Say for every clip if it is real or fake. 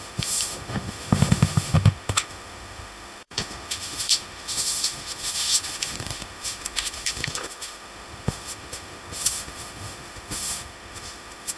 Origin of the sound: fake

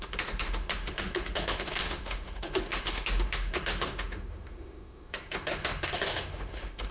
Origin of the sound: fake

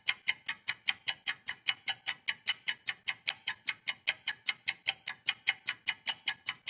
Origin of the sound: real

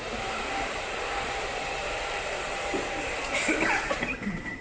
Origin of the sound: fake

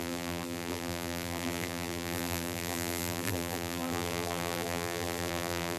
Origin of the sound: fake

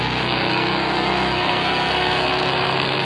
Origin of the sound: fake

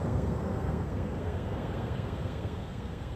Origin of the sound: fake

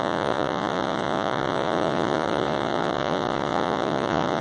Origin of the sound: fake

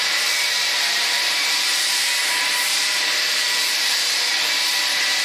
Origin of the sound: fake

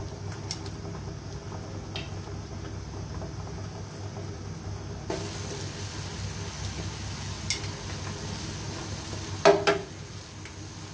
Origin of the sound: real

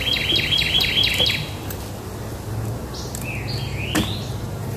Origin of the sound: real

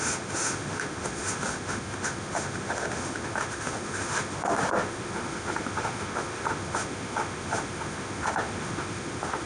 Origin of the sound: fake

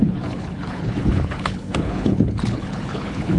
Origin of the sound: fake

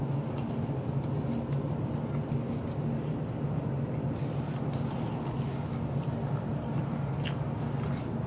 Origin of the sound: real